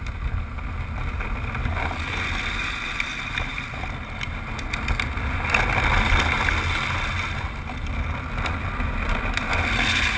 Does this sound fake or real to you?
real